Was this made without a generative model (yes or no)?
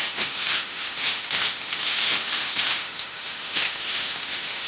no